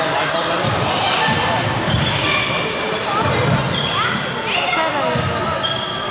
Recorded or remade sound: recorded